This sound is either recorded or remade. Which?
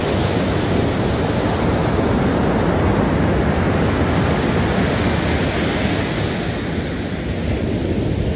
recorded